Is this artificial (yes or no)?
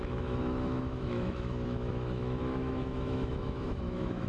yes